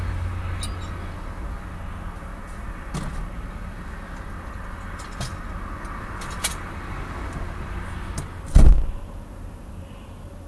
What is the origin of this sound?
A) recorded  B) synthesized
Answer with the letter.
A